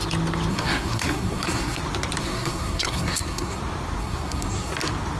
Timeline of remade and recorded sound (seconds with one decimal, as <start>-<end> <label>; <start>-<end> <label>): 0.0-0.5 recorded; 0.5-1.8 remade; 1.8-2.2 recorded; 2.2-3.6 remade; 3.6-4.0 recorded; 4.0-4.7 remade; 4.7-5.2 recorded